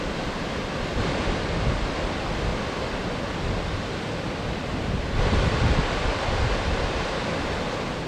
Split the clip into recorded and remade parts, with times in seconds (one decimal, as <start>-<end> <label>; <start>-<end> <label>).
0.0-2.5 recorded; 2.5-7.4 remade; 7.4-8.1 recorded